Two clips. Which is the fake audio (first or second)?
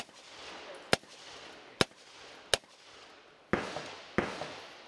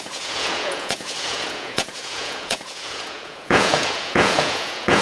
second